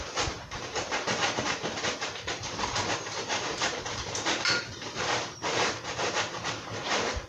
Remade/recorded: remade